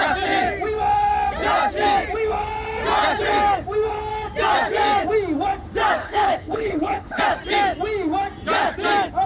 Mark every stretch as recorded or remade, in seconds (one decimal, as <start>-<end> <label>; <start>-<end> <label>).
0.0-6.0 recorded; 6.0-7.2 remade; 7.2-9.3 recorded